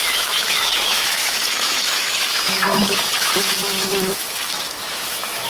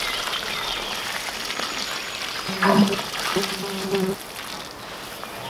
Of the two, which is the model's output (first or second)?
first